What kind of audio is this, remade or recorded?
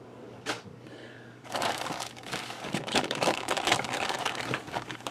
remade